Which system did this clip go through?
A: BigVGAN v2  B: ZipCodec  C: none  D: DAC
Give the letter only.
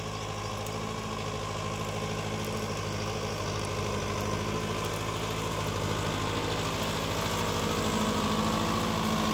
C